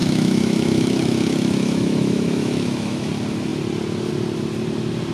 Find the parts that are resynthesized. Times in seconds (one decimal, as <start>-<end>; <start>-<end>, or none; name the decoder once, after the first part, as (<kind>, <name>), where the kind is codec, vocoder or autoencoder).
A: 0.0-3.1 (autoencoder, DAC-VAE)